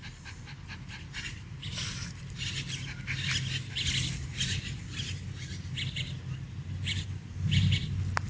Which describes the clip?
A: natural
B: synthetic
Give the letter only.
A